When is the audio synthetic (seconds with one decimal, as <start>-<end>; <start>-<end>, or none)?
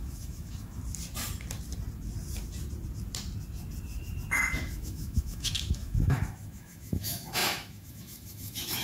0.0-0.8; 4.6-8.8